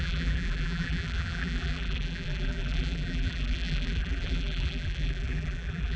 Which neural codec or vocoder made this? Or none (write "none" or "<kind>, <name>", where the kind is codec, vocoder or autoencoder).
vocoder, BigVGAN v2